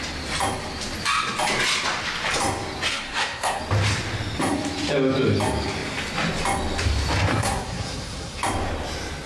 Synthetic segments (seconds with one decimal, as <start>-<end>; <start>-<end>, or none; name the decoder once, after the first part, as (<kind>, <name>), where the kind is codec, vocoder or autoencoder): 2.9-3.6 (codec, SNAC); 7.3-8.4